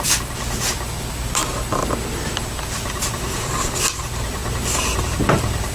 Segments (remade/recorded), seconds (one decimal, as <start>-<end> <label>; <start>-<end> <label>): 0.0-5.7 recorded